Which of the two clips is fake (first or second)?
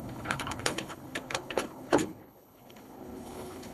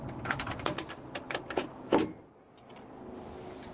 first